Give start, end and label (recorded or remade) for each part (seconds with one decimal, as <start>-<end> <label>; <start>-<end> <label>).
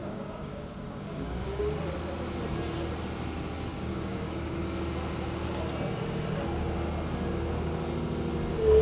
0.0-1.6 remade; 1.6-3.7 recorded; 3.7-4.6 remade; 4.6-8.8 recorded